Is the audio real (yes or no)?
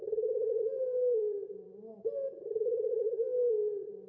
no